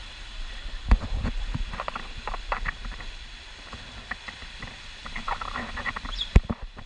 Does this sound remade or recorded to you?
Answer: recorded